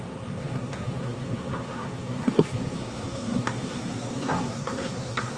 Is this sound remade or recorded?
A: remade